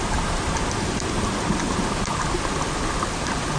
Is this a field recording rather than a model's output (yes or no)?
no